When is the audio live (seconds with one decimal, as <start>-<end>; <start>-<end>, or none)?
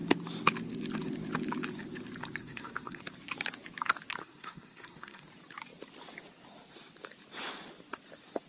0.0-2.4; 3.0-4.2; 5.2-8.5